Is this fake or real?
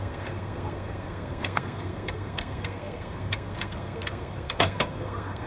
fake